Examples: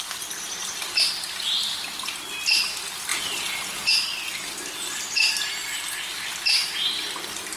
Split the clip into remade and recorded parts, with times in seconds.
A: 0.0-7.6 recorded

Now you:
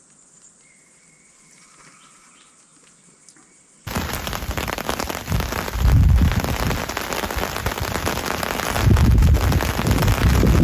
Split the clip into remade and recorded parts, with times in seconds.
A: 0.0-2.7 recorded; 2.7-6.6 remade; 6.6-10.6 recorded

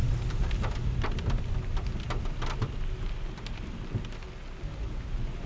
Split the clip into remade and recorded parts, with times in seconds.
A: 0.0-5.5 recorded

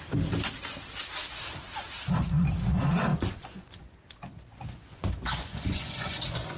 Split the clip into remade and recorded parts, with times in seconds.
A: 0.0-3.1 recorded; 3.1-6.6 remade

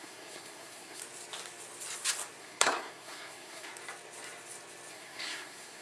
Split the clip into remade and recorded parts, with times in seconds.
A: 0.0-1.0 remade; 1.0-2.4 recorded; 2.4-3.7 remade; 3.7-4.9 recorded; 4.9-5.8 remade

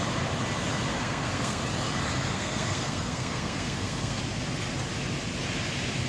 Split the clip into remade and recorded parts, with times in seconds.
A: 0.0-0.9 recorded; 0.9-1.6 remade; 1.6-2.3 recorded; 2.3-4.2 remade; 4.2-6.1 recorded

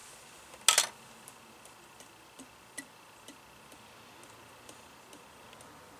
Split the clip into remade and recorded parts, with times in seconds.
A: 0.0-6.0 recorded

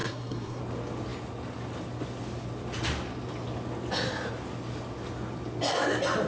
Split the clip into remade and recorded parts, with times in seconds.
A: 0.0-0.6 remade; 0.6-6.3 recorded